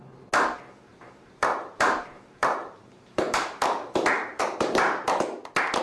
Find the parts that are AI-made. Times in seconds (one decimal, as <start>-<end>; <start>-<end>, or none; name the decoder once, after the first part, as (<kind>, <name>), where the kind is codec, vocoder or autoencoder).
0.9-4.4 (vocoder, BigVGAN v2)

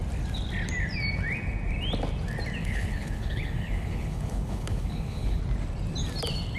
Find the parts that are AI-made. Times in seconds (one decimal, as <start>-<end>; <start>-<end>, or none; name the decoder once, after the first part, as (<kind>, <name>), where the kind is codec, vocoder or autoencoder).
2.6-5.4 (codec, HILCodec)

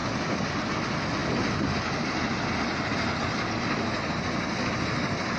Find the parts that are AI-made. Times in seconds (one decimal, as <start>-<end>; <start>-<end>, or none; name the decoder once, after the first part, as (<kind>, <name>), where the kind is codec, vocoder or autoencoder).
none

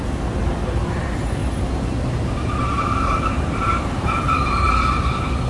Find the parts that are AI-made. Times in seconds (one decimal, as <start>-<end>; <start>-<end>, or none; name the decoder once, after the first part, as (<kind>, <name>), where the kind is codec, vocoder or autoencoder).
1.4-4.7 (vocoder, BigVGAN v2)